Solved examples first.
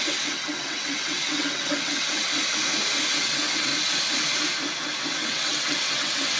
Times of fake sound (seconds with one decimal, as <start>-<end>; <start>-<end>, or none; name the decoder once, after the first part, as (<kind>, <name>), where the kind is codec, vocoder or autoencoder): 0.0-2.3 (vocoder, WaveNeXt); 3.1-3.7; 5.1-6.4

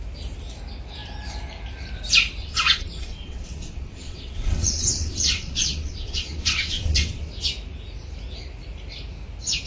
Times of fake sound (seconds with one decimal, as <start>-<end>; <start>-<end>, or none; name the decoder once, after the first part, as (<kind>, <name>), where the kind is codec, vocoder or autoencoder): 2.4-7.3 (vocoder, WaveNeXt)

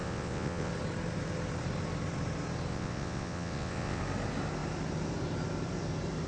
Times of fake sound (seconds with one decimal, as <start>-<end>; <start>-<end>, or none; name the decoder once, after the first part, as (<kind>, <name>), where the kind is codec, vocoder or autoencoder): 0.0-0.7 (vocoder, WaveNeXt); 2.7-4.0

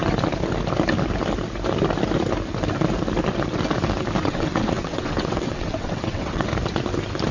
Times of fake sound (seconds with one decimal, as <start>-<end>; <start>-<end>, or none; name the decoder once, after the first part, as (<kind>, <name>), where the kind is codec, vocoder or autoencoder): 4.2-6.5 (vocoder, WaveNeXt)

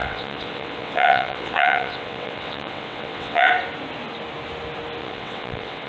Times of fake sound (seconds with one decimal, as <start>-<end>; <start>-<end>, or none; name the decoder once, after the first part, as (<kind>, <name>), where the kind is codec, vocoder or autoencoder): 0.0-3.5 (vocoder, WaveNeXt); 5.0-5.9

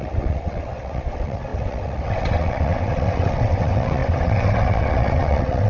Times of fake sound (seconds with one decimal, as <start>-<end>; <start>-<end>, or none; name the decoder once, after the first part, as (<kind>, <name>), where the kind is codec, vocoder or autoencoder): 0.0-5.7 (vocoder, WaveNeXt)

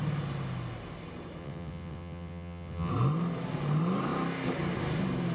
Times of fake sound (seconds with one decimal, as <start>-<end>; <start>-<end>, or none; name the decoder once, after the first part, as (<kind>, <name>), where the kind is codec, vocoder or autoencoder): 1.4-2.9 (vocoder, WaveNeXt)

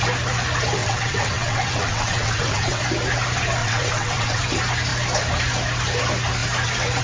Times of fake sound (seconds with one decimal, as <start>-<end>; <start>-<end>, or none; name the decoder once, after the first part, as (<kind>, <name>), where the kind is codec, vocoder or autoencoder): 0.8-2.8 (vocoder, WaveNeXt); 3.6-4.4